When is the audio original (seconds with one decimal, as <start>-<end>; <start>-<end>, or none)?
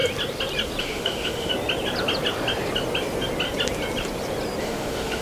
0.0-0.8; 1.5-4.6